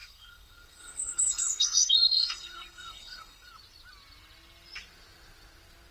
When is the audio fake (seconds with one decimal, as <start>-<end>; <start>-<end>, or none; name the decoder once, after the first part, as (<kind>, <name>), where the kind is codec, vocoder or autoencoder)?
0.0-3.5 (codec, SNAC)